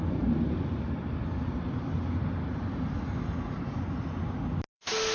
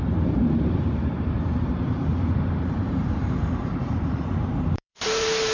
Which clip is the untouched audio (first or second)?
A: first